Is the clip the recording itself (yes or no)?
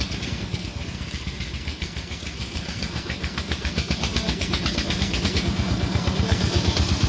no